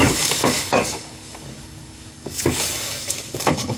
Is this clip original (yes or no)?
no